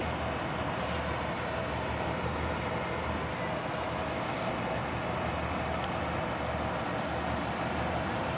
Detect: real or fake real